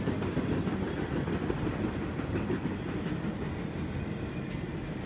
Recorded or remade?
recorded